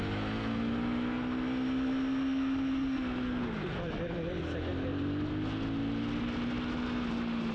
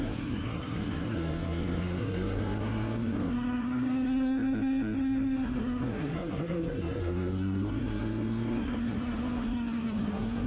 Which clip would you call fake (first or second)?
second